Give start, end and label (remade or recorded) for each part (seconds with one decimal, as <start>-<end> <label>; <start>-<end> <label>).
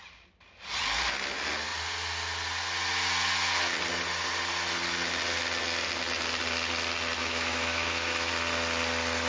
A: 0.0-7.2 recorded; 7.2-8.3 remade; 8.3-9.3 recorded